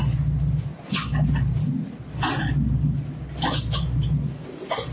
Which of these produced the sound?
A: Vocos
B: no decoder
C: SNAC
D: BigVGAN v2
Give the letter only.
B